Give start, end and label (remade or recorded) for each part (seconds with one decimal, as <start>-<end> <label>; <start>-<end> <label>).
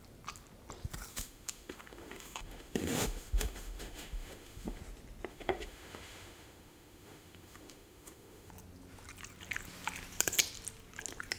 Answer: 0.0-1.1 recorded; 1.1-4.8 remade; 4.8-5.3 recorded; 5.3-8.5 remade; 8.5-11.4 recorded